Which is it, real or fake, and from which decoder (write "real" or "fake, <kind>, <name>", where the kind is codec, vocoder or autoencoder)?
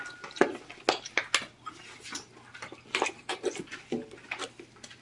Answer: real